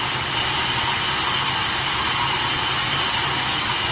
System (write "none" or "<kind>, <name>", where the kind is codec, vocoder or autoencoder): none